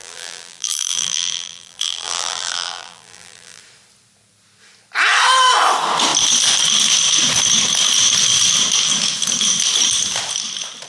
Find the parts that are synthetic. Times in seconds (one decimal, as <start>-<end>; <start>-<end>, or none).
0.0-3.6